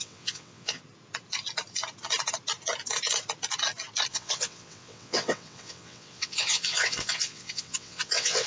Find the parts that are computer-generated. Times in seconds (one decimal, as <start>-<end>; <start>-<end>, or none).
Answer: 0.0-0.8; 4.1-8.5